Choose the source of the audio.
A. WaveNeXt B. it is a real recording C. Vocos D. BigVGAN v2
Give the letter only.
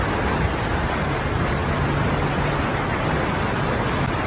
B